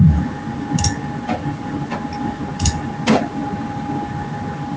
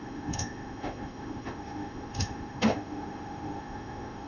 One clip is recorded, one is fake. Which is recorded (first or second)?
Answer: first